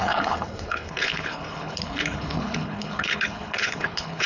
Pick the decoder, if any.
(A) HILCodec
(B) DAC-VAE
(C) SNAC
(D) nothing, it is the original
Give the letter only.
A